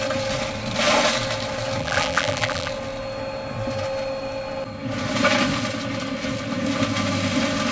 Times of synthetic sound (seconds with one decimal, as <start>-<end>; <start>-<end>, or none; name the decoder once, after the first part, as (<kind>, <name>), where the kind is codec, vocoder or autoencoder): 1.8-2.7 (vocoder, BigVGAN v2)